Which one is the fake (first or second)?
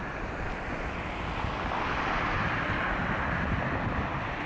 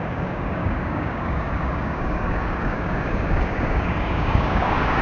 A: second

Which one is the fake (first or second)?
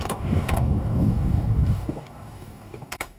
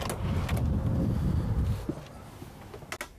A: first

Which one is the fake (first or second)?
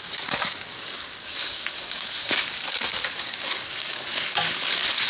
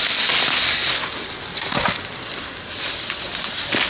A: first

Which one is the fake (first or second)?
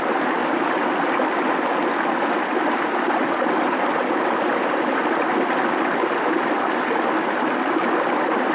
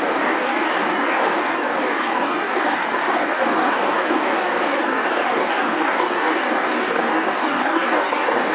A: second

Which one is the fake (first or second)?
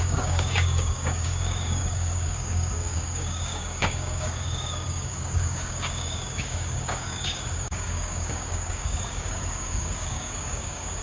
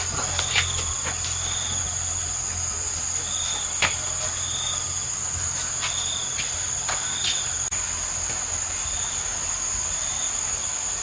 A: first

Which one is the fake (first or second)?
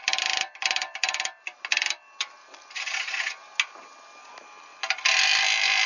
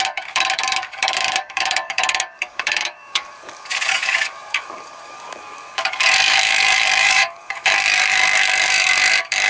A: second